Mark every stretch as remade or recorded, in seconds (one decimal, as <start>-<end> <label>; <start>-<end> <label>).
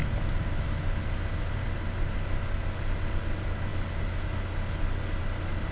0.0-5.7 recorded